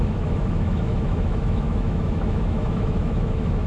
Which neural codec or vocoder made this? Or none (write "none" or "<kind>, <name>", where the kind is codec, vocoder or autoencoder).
autoencoder, DAC-VAE